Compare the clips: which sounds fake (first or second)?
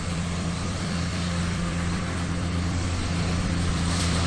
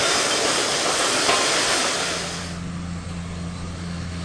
first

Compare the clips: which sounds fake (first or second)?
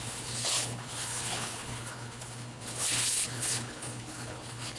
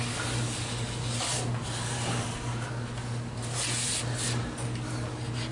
first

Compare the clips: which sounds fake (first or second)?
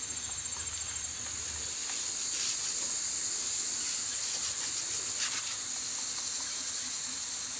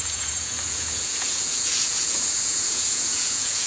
second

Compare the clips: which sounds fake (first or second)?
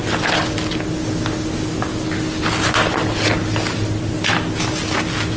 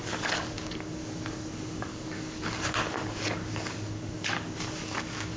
second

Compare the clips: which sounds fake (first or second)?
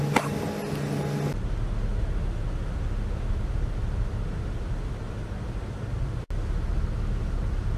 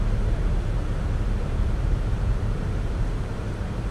second